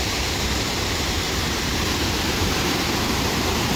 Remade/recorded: remade